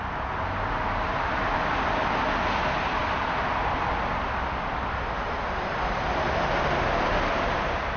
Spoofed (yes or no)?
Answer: no